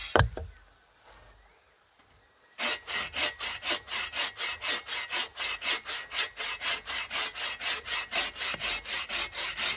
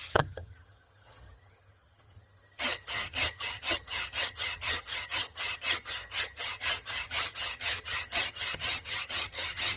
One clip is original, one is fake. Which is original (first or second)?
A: first